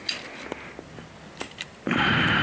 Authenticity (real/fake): real